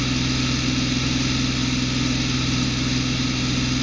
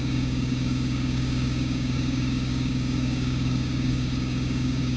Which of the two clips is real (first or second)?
first